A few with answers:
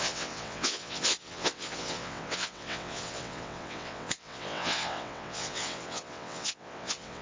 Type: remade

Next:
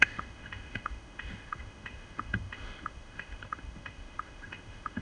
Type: remade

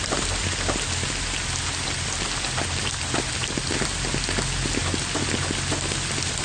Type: recorded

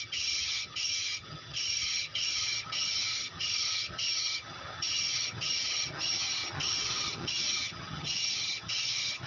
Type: remade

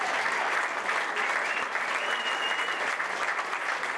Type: recorded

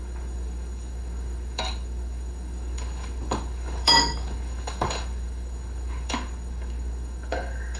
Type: remade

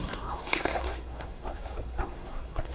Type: remade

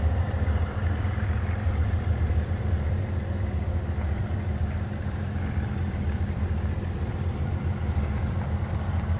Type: remade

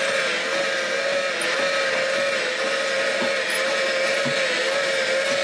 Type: recorded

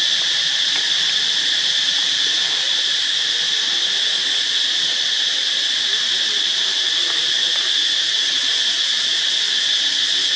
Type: recorded